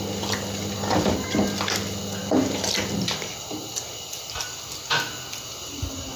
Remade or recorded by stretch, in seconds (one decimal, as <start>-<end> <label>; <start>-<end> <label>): 0.0-6.2 recorded